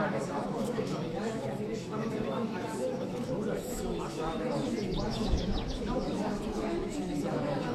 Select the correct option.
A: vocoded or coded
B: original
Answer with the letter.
A